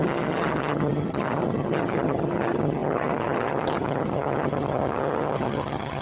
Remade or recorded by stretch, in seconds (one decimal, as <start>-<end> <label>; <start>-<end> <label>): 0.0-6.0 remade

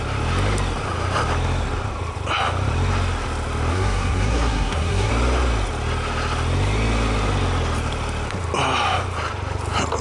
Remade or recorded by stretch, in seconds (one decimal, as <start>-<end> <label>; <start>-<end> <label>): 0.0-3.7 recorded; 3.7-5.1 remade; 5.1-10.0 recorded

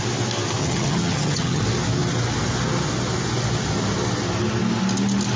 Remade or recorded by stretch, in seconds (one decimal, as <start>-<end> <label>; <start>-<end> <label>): 0.0-0.6 recorded; 0.6-1.6 remade; 1.6-5.4 recorded

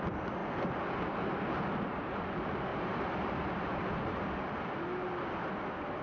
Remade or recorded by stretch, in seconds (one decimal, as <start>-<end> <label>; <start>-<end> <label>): 0.0-2.7 recorded; 2.7-3.8 remade; 3.8-6.0 recorded

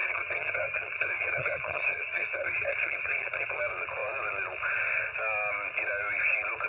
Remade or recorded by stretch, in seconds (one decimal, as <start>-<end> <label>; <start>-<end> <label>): 0.0-3.6 remade; 3.6-6.7 recorded